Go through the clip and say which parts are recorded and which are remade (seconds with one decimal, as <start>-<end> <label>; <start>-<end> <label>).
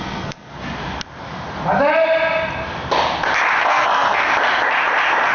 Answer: 0.0-0.5 remade; 0.5-3.7 recorded; 3.7-4.3 remade; 4.3-5.3 recorded